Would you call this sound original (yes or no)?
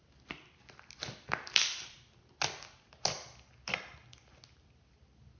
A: yes